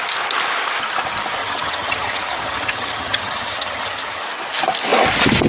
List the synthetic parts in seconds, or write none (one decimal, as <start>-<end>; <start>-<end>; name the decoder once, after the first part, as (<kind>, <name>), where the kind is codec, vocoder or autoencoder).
1.4-4.2 (vocoder, HiFi-GAN)